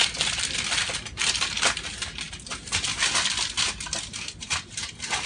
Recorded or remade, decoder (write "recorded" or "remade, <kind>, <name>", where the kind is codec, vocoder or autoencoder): recorded